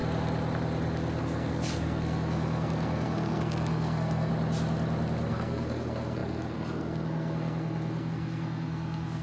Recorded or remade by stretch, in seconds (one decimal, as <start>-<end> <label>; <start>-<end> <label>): 0.0-1.2 recorded; 1.2-4.3 remade; 4.3-5.3 recorded; 5.3-9.2 remade